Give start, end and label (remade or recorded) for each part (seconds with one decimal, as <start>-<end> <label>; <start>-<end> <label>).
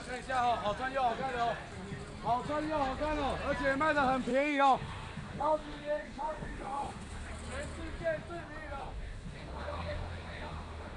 0.0-4.3 recorded; 4.3-7.3 remade; 7.3-8.8 recorded; 8.8-11.0 remade